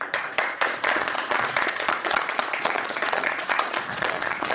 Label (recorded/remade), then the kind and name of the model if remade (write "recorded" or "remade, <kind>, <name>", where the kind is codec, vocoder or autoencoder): remade, vocoder, Vocos